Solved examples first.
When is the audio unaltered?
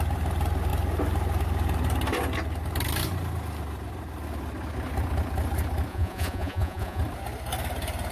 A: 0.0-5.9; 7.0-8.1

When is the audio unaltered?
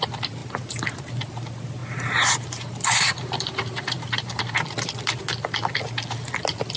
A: 0.0-0.4; 1.0-1.8; 4.4-6.8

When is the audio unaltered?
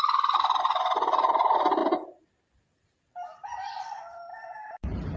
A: 0.0-5.2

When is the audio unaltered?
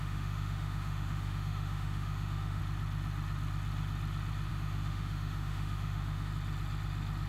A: 2.6-4.5; 6.3-7.3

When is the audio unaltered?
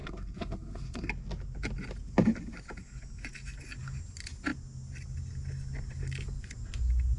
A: 1.1-7.2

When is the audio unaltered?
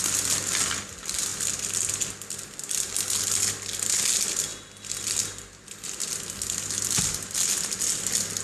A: 0.0-8.4